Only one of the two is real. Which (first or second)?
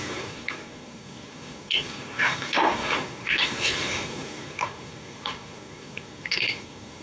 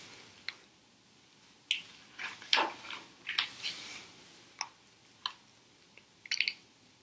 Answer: second